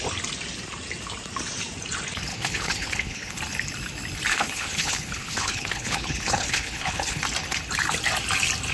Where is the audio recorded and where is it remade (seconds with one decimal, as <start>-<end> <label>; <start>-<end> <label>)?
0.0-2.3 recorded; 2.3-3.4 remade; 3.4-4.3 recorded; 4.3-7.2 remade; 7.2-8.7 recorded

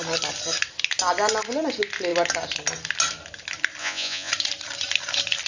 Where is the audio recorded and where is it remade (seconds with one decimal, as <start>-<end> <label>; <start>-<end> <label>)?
0.0-3.8 recorded; 3.8-4.3 remade; 4.3-5.5 recorded

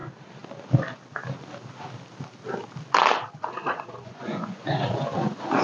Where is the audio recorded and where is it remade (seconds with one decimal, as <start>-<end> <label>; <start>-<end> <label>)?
0.0-3.4 recorded; 3.4-5.6 remade

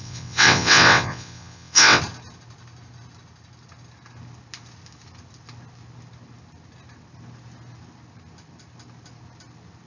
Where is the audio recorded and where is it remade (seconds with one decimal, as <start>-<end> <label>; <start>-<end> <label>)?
0.0-2.0 remade; 2.0-9.9 recorded

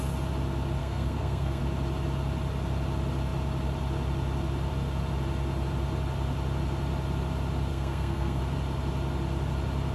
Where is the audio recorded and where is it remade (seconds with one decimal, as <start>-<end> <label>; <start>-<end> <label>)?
0.0-0.8 recorded; 0.8-1.6 remade; 1.6-7.7 recorded; 7.7-8.4 remade; 8.4-9.9 recorded

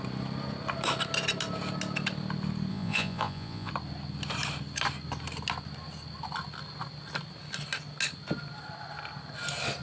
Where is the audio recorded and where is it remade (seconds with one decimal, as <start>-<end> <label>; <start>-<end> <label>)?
0.0-2.7 recorded; 2.7-3.7 remade; 3.7-9.8 recorded

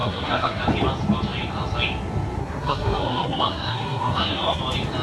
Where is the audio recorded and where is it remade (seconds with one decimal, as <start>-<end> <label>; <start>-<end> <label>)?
0.0-0.6 remade; 0.6-2.4 recorded; 2.4-4.6 remade; 4.6-5.0 recorded

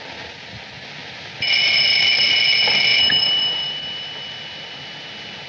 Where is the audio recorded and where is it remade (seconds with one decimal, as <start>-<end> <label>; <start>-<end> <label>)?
0.0-2.9 recorded; 2.9-4.3 remade; 4.3-5.5 recorded